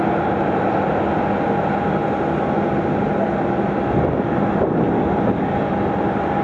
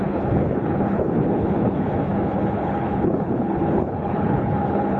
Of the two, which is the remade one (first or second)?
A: second